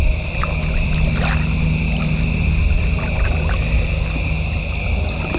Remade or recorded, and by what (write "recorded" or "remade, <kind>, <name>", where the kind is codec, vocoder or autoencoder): recorded